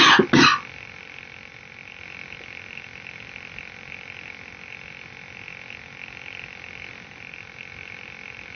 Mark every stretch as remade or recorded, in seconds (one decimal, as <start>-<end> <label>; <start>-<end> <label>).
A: 0.0-8.5 recorded